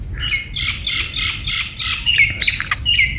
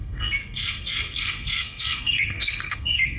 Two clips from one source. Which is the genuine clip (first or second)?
first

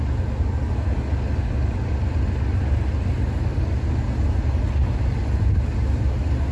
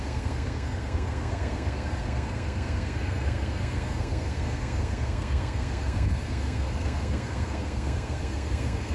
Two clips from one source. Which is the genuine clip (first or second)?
first